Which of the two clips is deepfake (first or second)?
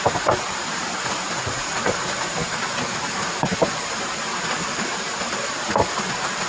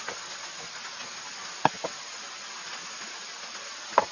first